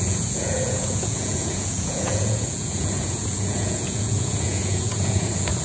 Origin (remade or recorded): remade